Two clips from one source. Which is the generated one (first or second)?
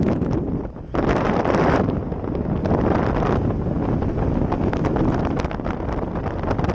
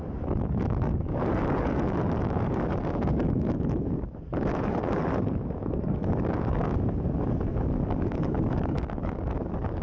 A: second